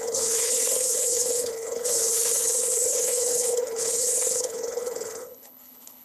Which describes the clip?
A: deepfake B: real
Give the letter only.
A